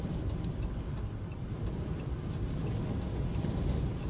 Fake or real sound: real